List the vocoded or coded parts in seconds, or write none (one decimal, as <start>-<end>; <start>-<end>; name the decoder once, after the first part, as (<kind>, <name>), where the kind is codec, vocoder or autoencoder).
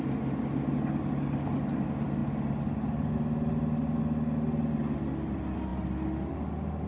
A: none